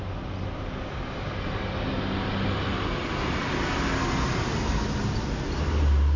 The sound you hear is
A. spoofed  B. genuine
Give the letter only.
B